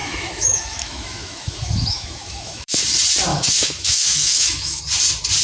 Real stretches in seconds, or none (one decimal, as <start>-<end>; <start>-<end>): 2.8-3.3; 4.8-5.4

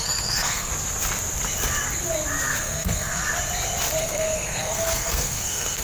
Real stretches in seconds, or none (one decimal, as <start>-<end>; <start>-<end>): 0.7-2.6; 3.2-4.0

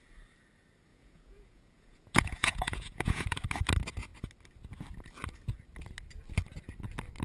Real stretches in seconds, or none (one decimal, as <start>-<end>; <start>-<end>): 0.0-0.9; 3.4-7.2

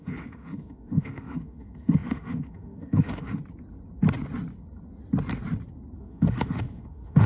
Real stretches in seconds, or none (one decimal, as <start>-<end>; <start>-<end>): 3.4-6.0

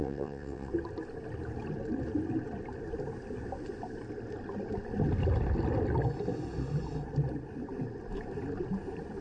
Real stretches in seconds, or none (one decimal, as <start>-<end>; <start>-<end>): 0.7-9.2

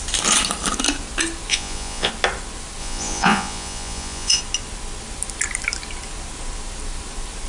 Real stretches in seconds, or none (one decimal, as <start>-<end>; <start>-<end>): 0.0-1.5; 2.1-2.8; 4.4-7.5

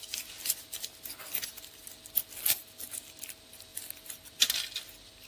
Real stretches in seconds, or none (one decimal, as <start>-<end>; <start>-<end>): 0.0-5.3

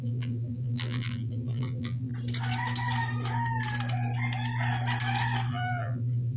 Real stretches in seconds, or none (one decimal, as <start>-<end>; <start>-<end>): 2.1-5.5